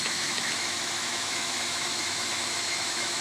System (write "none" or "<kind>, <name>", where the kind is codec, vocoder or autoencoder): autoencoder, DAC-VAE